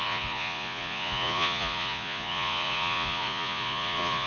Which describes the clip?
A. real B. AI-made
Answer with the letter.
B